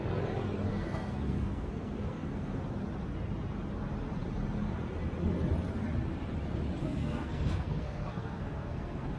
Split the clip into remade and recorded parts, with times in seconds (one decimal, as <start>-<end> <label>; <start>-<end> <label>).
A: 0.0-0.7 recorded; 0.7-2.6 remade; 2.6-6.8 recorded; 6.8-9.2 remade